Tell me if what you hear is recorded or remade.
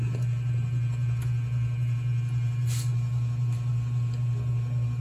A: recorded